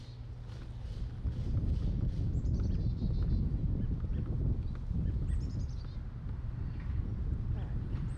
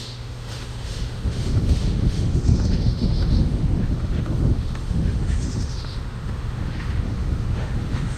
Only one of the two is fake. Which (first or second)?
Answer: second